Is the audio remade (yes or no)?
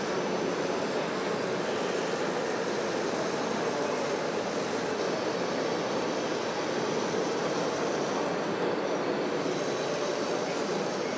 no